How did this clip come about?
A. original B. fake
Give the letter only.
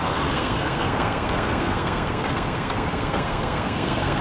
B